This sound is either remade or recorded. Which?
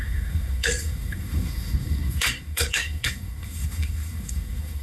remade